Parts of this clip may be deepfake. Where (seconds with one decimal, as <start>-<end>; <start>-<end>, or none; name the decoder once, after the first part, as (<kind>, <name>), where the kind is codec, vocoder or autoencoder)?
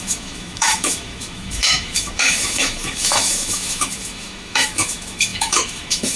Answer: 0.0-6.2 (autoencoder, DAC-VAE)